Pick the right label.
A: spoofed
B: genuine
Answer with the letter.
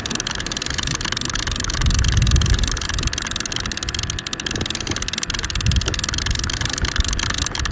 B